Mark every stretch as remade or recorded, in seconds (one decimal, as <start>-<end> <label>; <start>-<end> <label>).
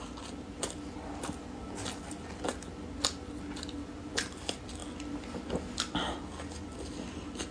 0.0-7.5 recorded